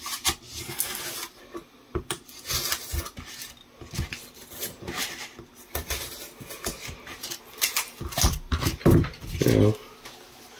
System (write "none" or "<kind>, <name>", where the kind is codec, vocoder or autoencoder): none